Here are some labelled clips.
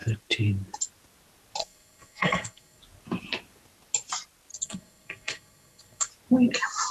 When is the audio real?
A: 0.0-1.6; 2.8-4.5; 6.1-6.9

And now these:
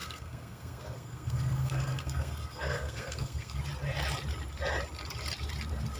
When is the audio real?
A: 3.6-6.0

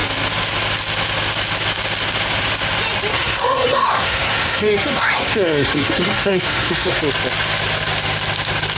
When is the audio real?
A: 0.0-3.1; 7.0-8.8

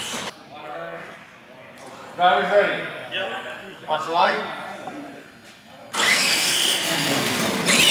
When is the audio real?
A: 0.0-0.6; 1.1-3.6; 4.4-6.1; 7.4-7.9

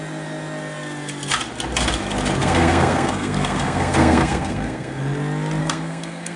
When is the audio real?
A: 0.0-2.4; 5.0-5.6